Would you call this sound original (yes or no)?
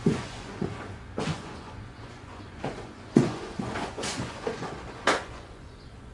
no